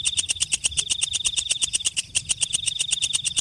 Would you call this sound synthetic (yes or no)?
no